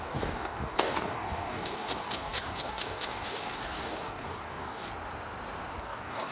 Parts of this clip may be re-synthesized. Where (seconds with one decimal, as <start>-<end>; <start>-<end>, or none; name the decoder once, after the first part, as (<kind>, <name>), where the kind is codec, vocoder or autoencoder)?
0.0-4.9 (codec, DAC); 5.8-6.3

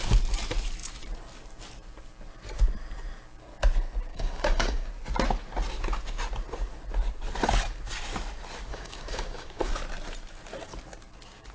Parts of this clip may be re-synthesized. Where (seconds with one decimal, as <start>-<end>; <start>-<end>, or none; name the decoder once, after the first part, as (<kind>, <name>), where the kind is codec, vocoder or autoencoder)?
4.1-4.9 (codec, DAC); 8.7-9.7

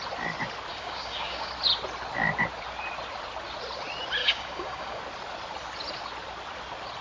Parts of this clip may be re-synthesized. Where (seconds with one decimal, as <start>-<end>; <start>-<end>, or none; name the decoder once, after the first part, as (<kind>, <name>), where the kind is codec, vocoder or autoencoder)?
0.7-1.5 (codec, DAC); 4.2-5.0

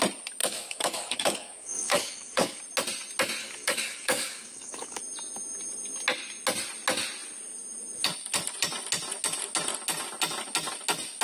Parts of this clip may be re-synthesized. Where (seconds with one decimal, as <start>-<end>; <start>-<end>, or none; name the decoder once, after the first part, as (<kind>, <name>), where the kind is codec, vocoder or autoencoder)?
0.4-2.6 (codec, DAC); 3.4-5.0

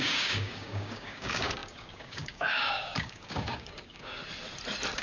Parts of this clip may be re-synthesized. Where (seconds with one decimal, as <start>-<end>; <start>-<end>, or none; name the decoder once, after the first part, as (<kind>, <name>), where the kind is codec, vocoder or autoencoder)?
0.0-4.2 (codec, DAC)

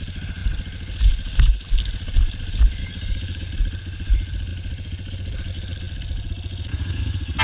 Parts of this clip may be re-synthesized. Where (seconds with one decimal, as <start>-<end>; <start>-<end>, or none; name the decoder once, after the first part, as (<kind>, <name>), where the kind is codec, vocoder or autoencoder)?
2.8-3.5 (codec, DAC); 6.7-7.4